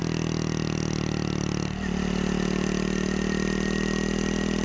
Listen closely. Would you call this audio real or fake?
real